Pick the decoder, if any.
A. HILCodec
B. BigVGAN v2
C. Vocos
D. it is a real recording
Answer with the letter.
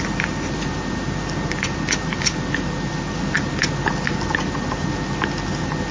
D